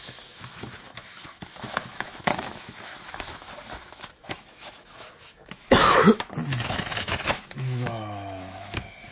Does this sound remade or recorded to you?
remade